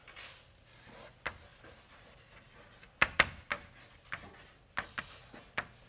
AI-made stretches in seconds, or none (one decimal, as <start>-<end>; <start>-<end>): none